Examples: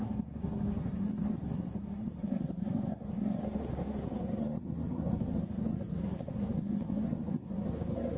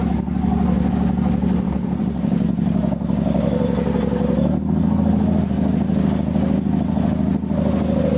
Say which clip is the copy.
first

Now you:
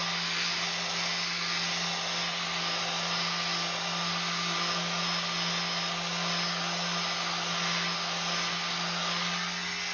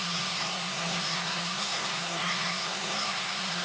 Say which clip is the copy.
second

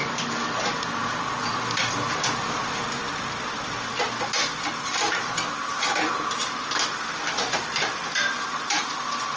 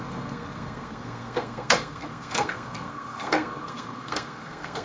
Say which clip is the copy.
second